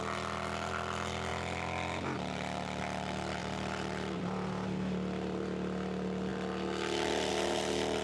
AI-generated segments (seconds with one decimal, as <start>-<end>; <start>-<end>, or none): 3.4-4.2